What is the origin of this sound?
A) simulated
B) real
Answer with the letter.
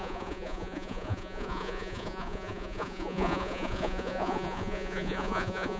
A